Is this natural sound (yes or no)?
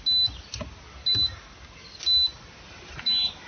yes